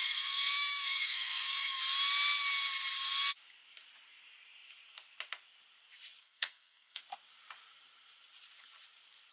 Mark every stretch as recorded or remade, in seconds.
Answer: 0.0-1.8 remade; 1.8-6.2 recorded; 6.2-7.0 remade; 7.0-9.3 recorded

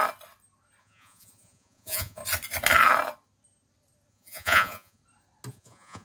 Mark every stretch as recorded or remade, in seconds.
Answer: 0.0-0.8 recorded; 0.8-2.2 remade; 2.2-4.1 recorded; 4.1-5.0 remade; 5.0-5.5 recorded; 5.5-6.0 remade

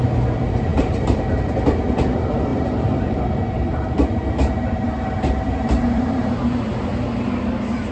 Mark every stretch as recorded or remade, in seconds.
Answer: 0.0-0.7 recorded; 0.7-1.2 remade; 1.2-2.5 recorded; 2.5-3.2 remade; 3.2-3.7 recorded; 3.7-6.4 remade; 6.4-7.9 recorded

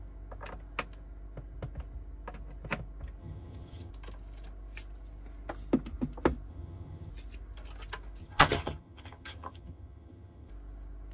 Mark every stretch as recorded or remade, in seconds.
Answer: 0.0-3.2 recorded; 3.2-3.9 remade; 3.9-6.5 recorded; 6.5-7.1 remade; 7.1-8.2 recorded; 8.2-10.5 remade; 10.5-11.1 recorded

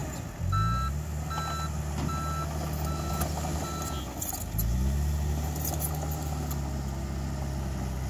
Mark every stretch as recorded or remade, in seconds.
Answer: 0.0-8.1 recorded

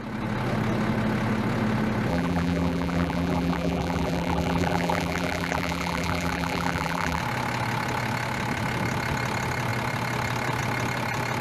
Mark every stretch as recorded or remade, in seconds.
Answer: 0.0-2.1 recorded; 2.1-7.2 remade; 7.2-11.4 recorded